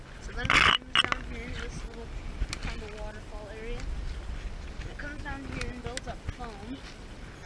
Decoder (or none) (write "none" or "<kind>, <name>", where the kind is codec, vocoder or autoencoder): none